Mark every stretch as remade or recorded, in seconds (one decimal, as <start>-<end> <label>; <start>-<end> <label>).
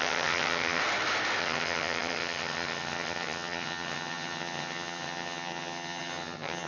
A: 0.0-0.8 remade; 0.8-1.4 recorded; 1.4-6.7 remade